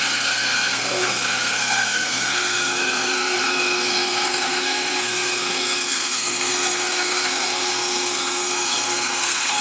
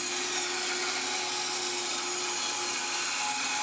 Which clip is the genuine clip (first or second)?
second